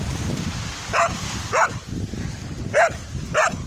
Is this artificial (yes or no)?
no